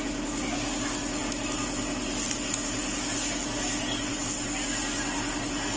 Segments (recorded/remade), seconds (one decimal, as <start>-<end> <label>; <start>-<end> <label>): 0.0-5.8 recorded